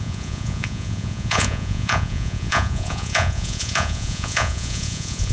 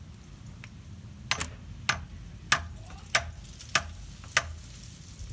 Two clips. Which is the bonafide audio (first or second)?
second